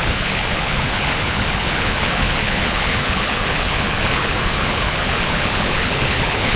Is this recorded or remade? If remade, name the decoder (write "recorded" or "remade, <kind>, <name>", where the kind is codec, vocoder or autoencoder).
remade, codec, HILCodec